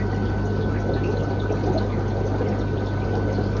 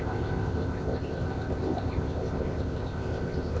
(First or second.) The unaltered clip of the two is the first